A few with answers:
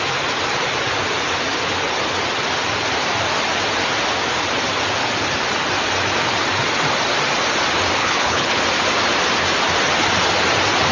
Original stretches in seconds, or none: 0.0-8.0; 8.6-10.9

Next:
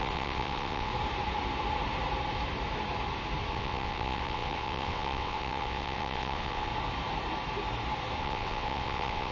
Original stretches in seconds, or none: 0.9-3.5; 6.7-8.2

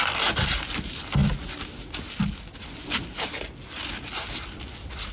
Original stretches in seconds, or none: 0.0-5.1

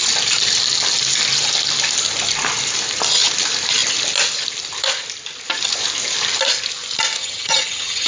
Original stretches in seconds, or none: 0.0-7.2